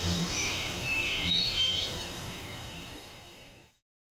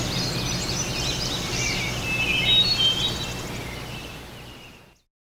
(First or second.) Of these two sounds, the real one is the second